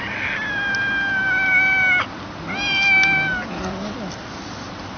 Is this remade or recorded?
recorded